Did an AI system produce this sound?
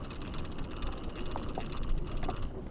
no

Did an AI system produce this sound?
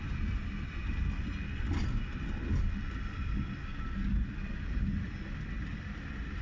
no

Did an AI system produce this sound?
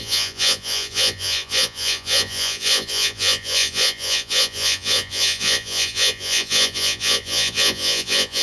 yes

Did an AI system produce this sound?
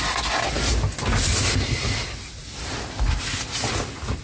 no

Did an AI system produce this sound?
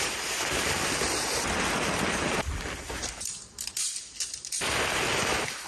no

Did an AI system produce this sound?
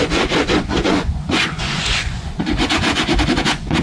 yes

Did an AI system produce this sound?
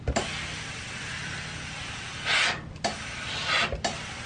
no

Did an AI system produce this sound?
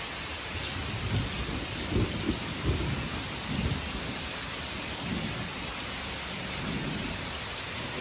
no